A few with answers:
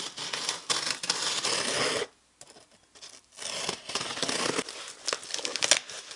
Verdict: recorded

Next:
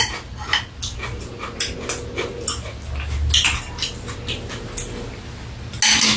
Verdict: recorded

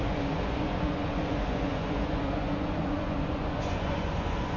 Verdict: remade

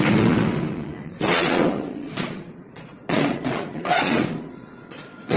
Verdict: remade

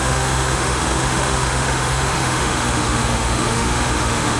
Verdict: remade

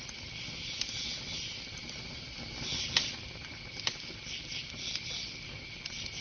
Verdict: recorded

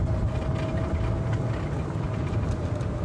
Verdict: recorded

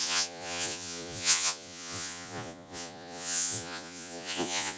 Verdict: remade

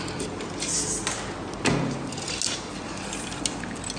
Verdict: recorded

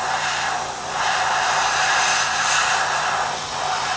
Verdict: recorded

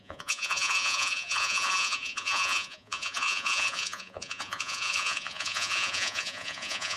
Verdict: remade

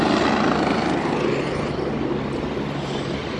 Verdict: recorded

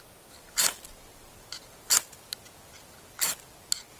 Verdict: recorded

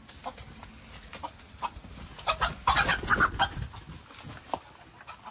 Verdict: recorded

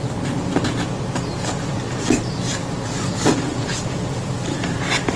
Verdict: recorded